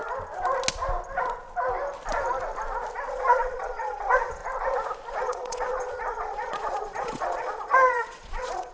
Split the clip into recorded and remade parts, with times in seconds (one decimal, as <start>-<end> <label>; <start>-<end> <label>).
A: 0.0-3.1 recorded; 3.1-4.4 remade; 4.4-5.1 recorded; 5.1-8.7 remade